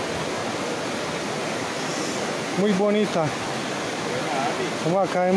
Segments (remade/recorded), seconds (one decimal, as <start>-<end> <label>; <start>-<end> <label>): 0.0-0.4 recorded; 0.4-1.3 remade; 1.3-5.4 recorded

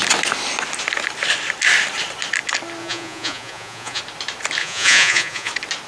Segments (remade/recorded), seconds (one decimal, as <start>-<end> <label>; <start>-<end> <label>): 0.0-2.8 recorded; 2.8-4.0 remade; 4.0-4.6 recorded; 4.6-5.5 remade; 5.5-5.9 recorded

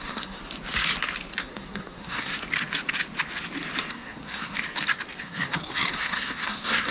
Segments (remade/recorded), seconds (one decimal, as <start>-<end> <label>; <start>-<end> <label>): 0.0-0.4 remade; 0.4-1.4 recorded; 1.4-2.3 remade; 2.3-3.9 recorded; 3.9-4.6 remade; 4.6-5.2 recorded; 5.2-6.9 remade

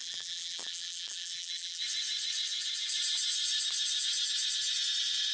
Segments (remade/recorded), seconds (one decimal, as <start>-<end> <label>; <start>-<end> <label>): 0.0-1.8 remade; 1.8-5.3 recorded

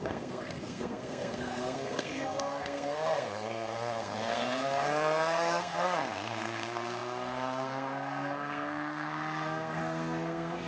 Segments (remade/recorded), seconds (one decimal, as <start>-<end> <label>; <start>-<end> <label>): 0.0-10.7 remade

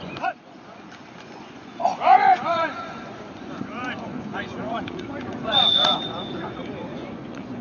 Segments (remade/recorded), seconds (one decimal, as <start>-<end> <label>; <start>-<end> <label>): 0.0-7.6 remade

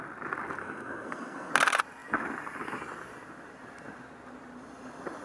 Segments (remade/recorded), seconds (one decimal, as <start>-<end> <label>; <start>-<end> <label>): 0.0-0.6 recorded; 0.6-1.5 remade; 1.5-5.2 recorded